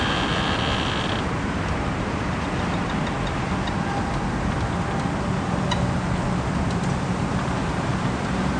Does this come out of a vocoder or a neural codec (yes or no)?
no